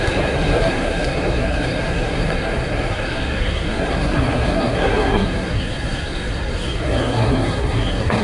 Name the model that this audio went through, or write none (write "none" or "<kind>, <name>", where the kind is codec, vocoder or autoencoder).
codec, SNAC